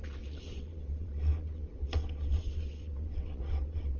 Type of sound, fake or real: fake